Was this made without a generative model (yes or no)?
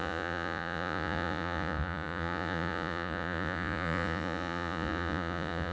no